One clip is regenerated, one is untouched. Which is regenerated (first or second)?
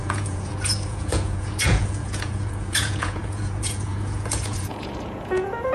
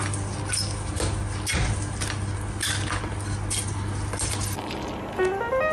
first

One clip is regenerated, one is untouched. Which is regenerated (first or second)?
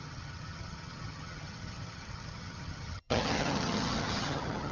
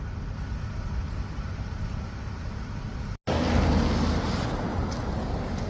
first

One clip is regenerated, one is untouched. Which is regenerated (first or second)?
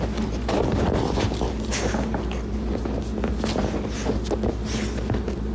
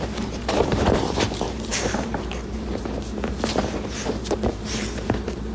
second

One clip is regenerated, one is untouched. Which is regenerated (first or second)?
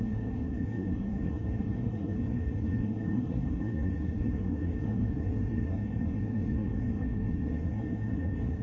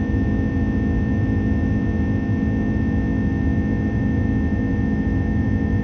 first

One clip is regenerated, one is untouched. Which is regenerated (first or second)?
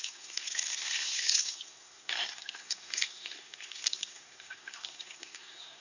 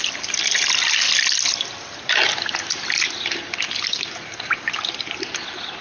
first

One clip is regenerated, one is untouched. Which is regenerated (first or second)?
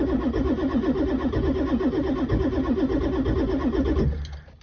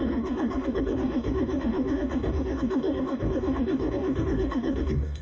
second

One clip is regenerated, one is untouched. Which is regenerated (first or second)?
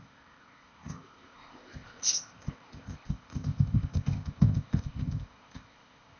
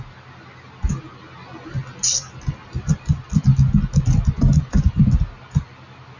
first